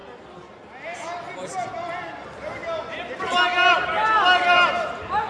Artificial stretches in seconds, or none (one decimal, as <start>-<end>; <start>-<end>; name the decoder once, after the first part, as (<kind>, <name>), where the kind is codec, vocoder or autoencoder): none